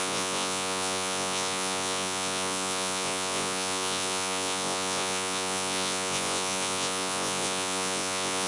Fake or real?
fake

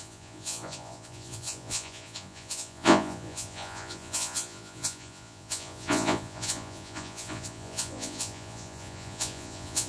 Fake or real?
fake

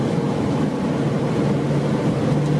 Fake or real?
real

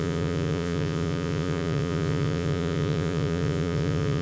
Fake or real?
fake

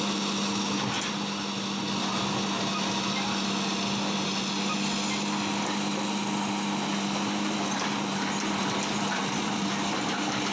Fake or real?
real